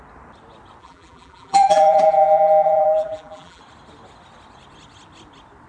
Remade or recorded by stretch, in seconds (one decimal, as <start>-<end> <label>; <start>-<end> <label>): 0.0-0.8 recorded; 0.8-3.6 remade; 3.6-5.7 recorded